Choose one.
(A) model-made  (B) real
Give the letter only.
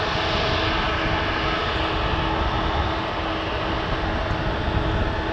B